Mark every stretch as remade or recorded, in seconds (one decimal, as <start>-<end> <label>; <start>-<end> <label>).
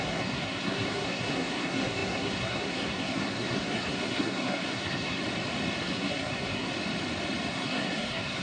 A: 0.0-5.2 remade; 5.2-5.8 recorded; 5.8-6.7 remade; 6.7-7.5 recorded; 7.5-8.4 remade